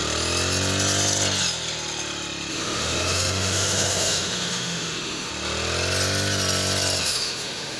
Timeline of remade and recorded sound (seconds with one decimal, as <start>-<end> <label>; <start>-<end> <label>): 0.0-2.5 recorded; 2.5-5.3 remade; 5.3-7.0 recorded; 7.0-7.8 remade